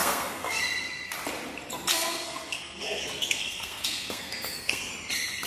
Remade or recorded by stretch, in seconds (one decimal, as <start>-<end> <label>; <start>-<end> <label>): 0.0-0.6 remade; 0.6-1.9 recorded; 1.9-4.9 remade; 4.9-5.5 recorded